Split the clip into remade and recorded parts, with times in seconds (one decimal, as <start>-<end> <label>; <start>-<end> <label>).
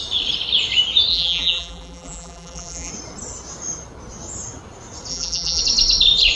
0.0-1.1 recorded; 1.1-2.9 remade; 2.9-5.1 recorded; 5.1-5.6 remade; 5.6-6.4 recorded